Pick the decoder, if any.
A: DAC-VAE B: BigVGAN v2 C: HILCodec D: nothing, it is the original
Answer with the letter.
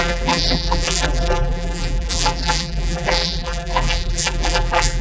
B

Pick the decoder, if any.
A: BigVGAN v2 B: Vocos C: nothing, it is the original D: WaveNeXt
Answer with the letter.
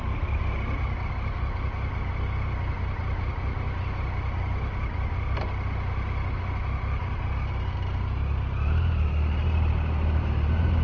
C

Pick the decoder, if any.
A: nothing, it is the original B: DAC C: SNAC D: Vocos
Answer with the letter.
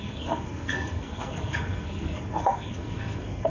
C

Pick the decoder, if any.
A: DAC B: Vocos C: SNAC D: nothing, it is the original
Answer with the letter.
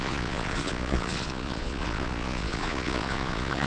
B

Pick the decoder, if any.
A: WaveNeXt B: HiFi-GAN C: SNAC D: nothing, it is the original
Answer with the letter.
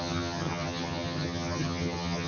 B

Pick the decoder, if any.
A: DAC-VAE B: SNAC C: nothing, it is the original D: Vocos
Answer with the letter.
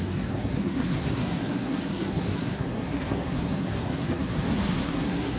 B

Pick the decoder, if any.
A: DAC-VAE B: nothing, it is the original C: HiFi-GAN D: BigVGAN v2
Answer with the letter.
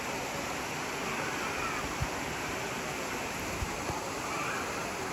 B